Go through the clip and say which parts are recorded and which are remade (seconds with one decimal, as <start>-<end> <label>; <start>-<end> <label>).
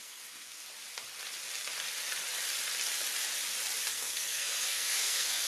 0.0-0.6 remade; 0.6-3.9 recorded; 3.9-5.5 remade